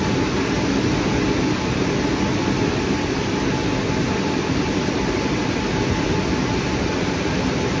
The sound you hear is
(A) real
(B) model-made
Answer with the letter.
A